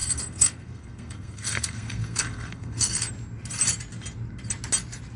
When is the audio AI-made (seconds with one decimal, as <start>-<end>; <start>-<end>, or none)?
0.0-3.1